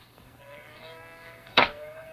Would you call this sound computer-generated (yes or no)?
yes